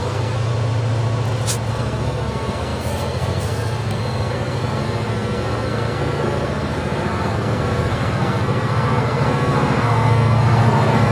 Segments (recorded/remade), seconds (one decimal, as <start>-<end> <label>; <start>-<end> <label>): 0.0-0.5 remade; 0.5-1.7 recorded; 1.7-11.1 remade